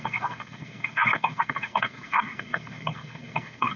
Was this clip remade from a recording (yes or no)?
yes